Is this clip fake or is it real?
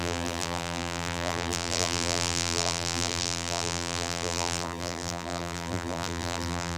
fake